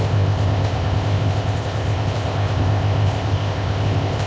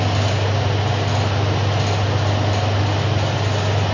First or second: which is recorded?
second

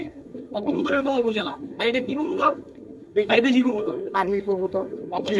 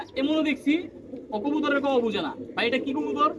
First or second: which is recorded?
second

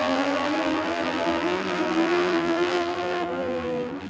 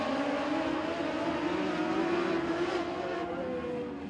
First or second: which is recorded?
second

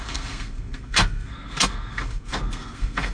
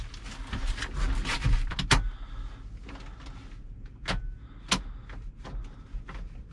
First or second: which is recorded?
second